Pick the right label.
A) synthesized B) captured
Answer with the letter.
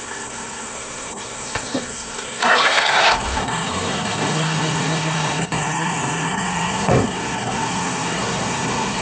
A